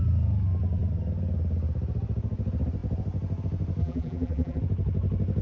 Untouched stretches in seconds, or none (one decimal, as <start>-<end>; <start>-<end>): 0.0-3.8; 4.6-5.4